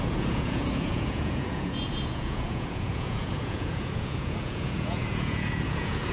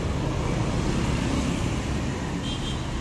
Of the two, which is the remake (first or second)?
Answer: first